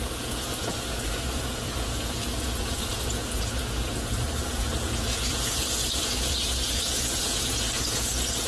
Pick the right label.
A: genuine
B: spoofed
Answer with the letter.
B